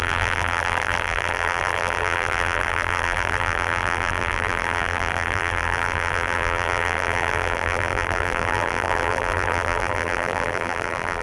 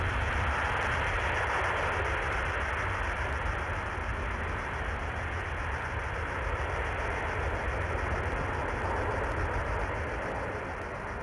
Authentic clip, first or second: second